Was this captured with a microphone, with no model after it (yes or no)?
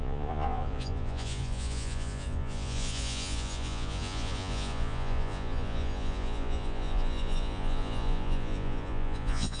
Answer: no